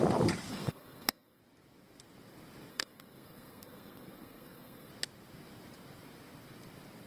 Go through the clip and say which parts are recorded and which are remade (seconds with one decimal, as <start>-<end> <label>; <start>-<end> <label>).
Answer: 0.0-0.5 recorded; 0.5-1.4 remade; 1.4-2.7 recorded; 2.7-4.9 remade; 4.9-7.1 recorded